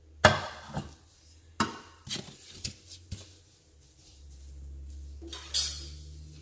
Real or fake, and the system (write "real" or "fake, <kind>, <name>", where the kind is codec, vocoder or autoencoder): real